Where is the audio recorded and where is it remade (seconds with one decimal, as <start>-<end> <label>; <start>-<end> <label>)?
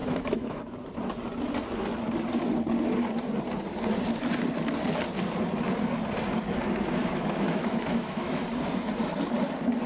0.0-0.6 remade; 0.6-7.0 recorded; 7.0-8.4 remade; 8.4-9.9 recorded